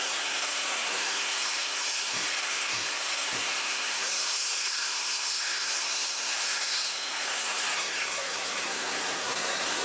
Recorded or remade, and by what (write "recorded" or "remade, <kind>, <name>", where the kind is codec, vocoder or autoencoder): remade, codec, SNAC